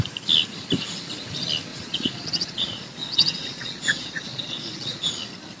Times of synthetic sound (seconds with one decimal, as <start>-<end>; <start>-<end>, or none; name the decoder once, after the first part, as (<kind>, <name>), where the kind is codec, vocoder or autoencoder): 1.7-5.1 (vocoder, Vocos)